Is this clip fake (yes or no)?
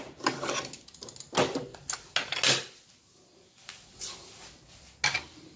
no